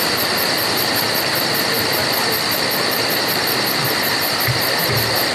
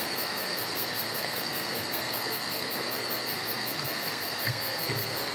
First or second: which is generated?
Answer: second